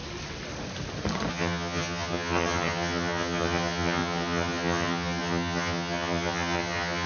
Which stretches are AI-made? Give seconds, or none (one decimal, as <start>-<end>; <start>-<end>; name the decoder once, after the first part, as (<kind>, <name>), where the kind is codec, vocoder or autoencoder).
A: 1.3-7.1 (vocoder, HiFi-GAN)